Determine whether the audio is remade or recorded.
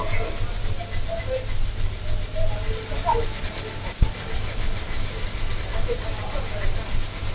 recorded